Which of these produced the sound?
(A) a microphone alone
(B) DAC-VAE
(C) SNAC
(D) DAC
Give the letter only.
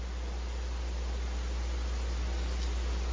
A